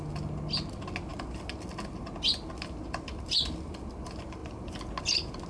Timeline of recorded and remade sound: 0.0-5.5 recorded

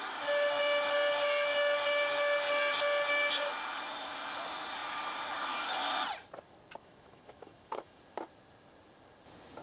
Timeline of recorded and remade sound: 0.0-6.8 recorded; 6.8-8.0 remade; 8.0-9.6 recorded

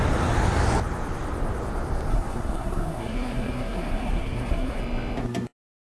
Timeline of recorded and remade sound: 0.0-2.1 recorded; 2.1-4.8 remade; 4.8-5.8 recorded

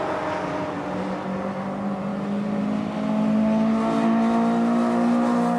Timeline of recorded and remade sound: 0.0-5.6 recorded